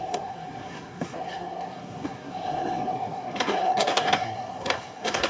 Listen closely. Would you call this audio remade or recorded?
remade